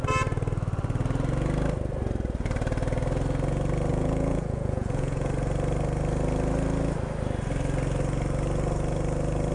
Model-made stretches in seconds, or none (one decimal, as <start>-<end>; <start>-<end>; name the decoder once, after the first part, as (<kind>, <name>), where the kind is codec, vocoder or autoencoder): 3.9-5.3 (vocoder, Vocos)